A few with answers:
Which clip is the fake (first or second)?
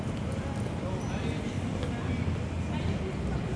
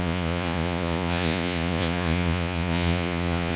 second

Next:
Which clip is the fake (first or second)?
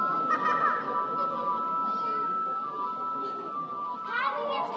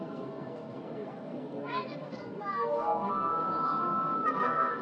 second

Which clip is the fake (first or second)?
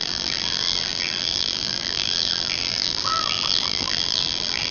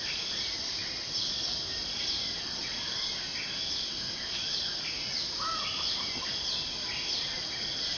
first